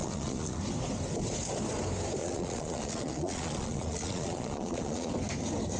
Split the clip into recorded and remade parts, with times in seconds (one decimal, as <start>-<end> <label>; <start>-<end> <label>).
0.0-0.6 remade; 0.6-2.2 recorded; 2.2-5.1 remade; 5.1-5.8 recorded